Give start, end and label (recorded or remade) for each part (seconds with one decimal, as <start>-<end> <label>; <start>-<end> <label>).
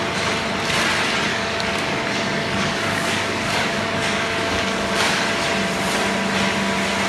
0.0-1.3 recorded; 1.3-5.3 remade; 5.3-7.1 recorded